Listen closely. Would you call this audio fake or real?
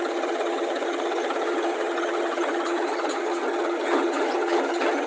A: fake